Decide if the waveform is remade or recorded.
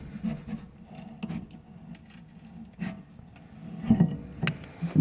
recorded